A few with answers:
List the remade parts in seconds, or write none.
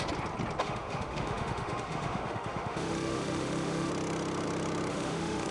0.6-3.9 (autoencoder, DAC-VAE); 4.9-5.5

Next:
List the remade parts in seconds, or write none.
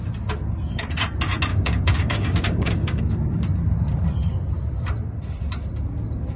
1.5-3.0 (codec, DAC)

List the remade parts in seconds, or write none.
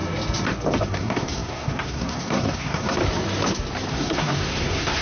0.8-3.0 (codec, SNAC); 3.9-5.0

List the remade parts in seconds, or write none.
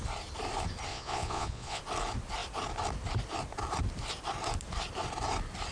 0.9-1.8 (vocoder, Vocos)